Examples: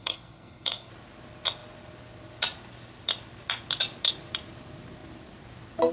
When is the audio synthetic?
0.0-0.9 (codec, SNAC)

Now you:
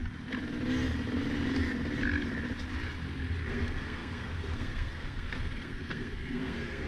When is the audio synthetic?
3.5-6.9 (codec, SNAC)

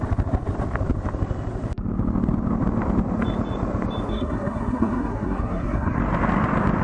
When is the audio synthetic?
4.1-6.0 (codec, SNAC)

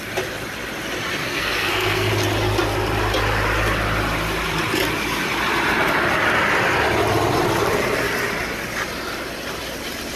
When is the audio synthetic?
1.2-2.1 (codec, SNAC)

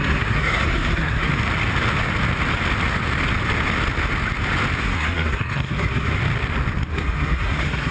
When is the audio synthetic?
0.0-1.3 (codec, SNAC); 4.8-6.2; 6.9-7.9

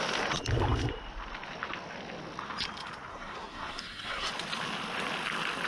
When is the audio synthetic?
3.1-4.3 (codec, SNAC)

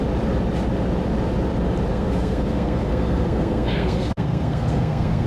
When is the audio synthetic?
1.9-5.3 (codec, SNAC)

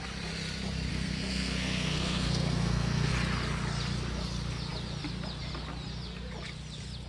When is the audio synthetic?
0.9-3.1 (codec, SNAC)